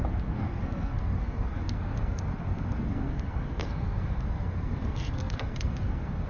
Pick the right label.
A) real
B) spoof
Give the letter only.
B